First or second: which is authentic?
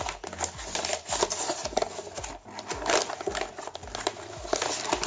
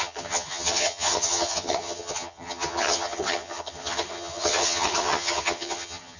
first